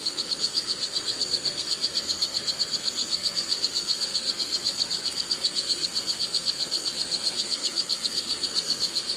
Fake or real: fake